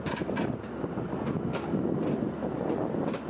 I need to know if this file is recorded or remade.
recorded